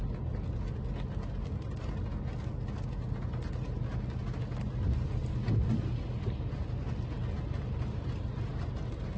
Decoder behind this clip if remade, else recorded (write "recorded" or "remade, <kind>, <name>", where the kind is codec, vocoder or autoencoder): recorded